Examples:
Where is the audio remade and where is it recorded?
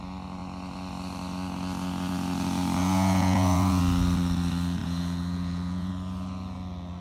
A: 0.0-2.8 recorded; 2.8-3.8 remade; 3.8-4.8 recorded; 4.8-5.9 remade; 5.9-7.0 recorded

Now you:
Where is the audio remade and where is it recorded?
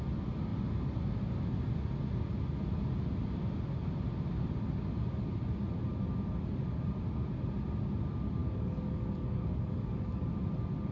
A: 0.0-8.4 recorded; 8.4-10.3 remade; 10.3-10.9 recorded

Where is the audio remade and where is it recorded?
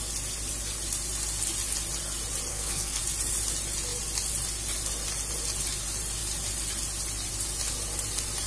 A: 0.0-2.5 recorded; 2.5-3.0 remade; 3.0-8.5 recorded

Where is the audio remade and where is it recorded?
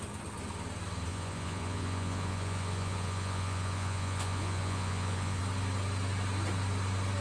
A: 0.0-1.1 recorded; 1.1-5.4 remade; 5.4-7.2 recorded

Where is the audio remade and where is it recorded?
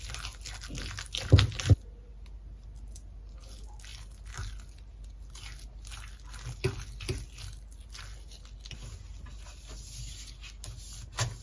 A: 0.0-11.4 recorded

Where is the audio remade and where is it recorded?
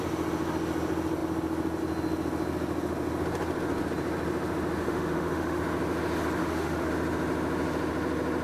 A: 0.0-4.8 recorded; 4.8-5.6 remade; 5.6-6.4 recorded; 6.4-6.9 remade; 6.9-8.4 recorded